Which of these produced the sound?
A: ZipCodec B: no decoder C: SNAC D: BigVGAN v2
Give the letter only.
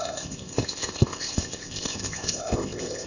A